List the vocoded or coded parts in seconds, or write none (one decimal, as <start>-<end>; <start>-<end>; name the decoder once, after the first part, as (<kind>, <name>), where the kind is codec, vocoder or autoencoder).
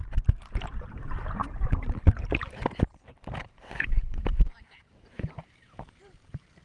0.0-6.6 (vocoder, BigVGAN v2)